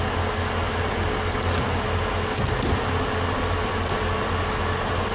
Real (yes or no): yes